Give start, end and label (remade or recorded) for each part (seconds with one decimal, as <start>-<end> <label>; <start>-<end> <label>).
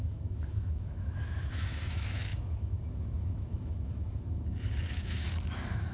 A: 0.0-5.9 remade